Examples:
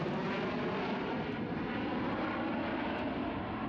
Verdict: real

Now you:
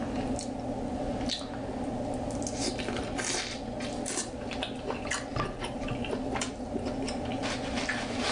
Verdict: real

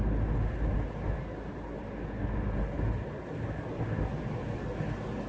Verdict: real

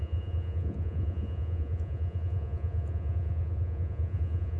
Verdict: fake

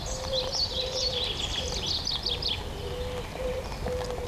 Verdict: real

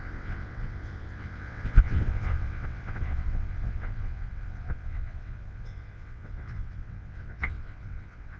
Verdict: fake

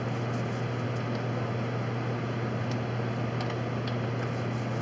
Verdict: real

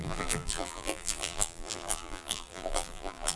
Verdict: fake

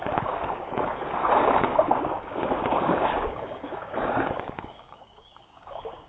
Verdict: fake